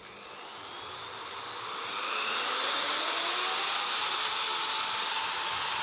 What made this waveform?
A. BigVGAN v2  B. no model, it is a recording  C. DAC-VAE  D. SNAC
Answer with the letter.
B